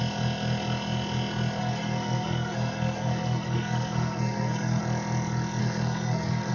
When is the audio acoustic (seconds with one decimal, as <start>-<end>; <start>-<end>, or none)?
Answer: 0.0-1.6; 4.8-5.6